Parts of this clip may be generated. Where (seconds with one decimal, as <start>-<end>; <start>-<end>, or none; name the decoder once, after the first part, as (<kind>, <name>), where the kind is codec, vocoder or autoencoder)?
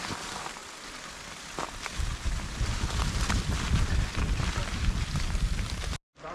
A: none